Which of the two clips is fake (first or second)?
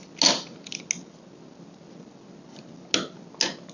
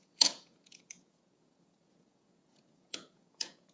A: second